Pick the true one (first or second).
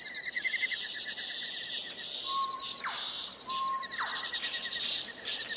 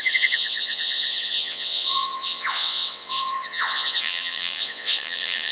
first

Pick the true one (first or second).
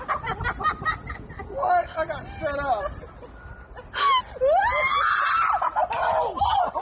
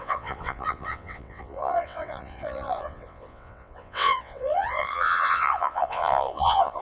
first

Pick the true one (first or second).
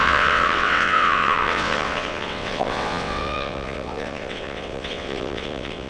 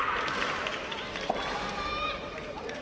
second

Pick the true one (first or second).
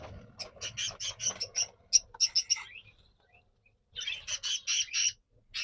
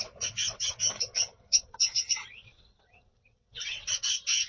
first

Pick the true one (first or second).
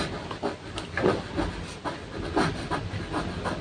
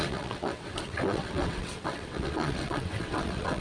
first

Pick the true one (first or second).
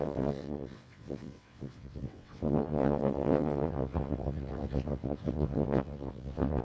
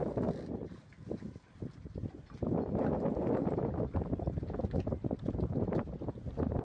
second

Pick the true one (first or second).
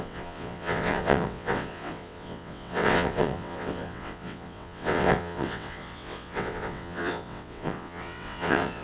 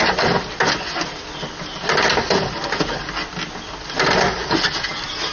second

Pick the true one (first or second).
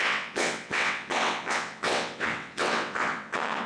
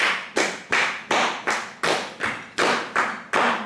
second